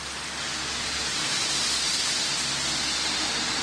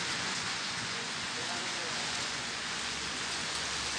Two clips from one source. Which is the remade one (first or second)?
second